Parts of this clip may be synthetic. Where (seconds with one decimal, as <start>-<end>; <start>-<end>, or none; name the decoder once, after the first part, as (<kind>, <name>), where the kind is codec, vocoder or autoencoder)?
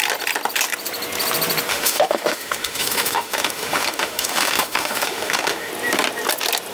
1.7-5.7 (autoencoder, DAC-VAE)